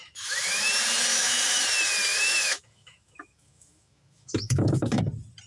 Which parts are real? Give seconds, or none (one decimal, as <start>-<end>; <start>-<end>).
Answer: 0.7-1.1; 1.6-2.1; 5.0-5.5